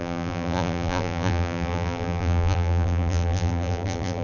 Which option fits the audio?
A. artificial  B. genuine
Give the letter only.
A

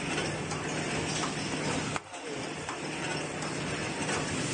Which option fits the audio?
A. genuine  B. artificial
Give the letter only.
A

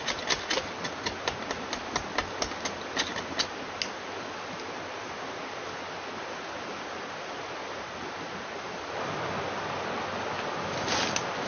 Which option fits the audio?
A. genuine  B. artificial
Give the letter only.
A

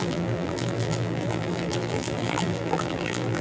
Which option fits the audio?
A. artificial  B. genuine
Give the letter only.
A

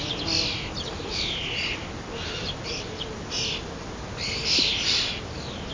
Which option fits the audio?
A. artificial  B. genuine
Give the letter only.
B